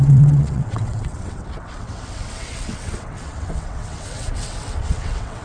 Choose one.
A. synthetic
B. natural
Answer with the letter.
A